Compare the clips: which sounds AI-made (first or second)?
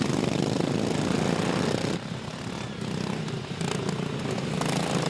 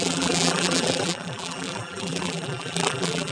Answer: second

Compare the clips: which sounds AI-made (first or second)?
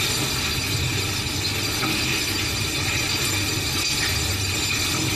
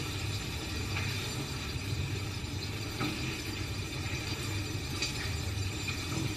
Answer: second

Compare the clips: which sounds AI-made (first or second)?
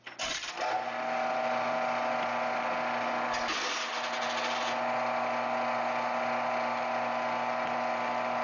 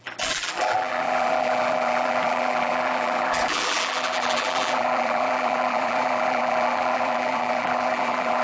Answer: second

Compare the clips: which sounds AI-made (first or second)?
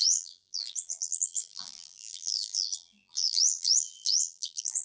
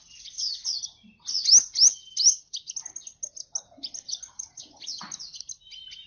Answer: first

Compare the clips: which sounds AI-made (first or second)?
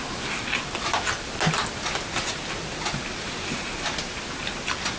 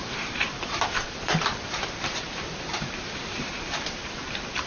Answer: second